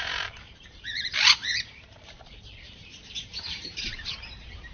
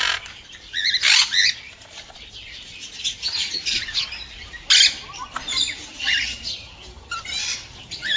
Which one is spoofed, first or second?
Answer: first